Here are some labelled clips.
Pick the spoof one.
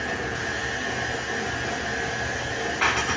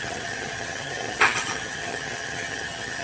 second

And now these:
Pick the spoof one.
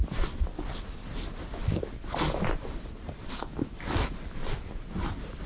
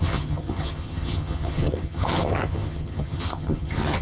second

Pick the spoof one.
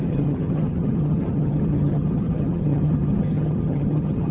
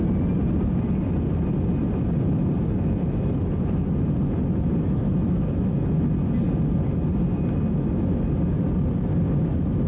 first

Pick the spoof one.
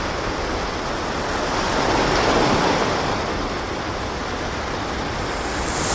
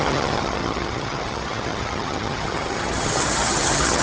second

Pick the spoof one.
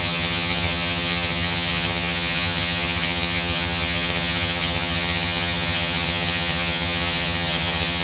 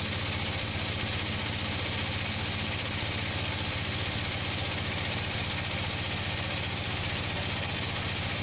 first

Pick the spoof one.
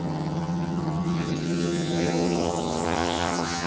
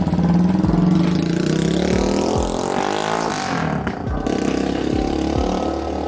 first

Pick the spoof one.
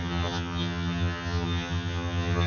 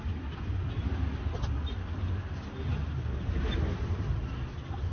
first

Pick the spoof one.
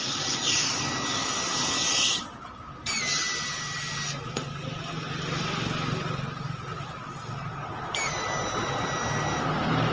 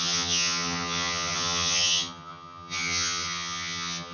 second